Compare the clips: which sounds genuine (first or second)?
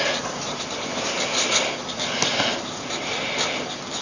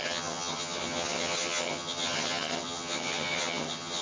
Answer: first